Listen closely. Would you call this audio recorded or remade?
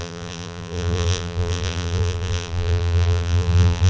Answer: remade